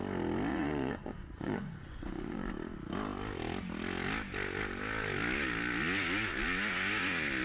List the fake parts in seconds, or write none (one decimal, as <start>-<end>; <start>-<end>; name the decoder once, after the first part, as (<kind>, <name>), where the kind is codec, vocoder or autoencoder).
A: 0.5-2.5 (vocoder, Vocos)